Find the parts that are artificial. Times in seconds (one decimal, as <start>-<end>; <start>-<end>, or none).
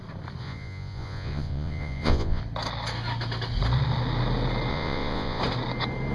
0.4-2.4; 4.7-5.4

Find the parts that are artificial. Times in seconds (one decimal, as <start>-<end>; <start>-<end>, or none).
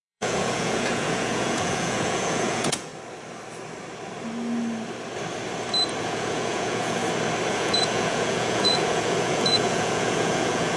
0.0-2.9; 6.0-7.0; 7.5-10.8